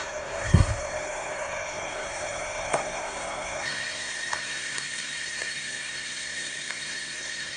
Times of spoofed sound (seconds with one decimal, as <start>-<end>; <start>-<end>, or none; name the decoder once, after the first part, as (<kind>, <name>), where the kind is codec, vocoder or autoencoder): 0.0-7.6 (codec, SNAC)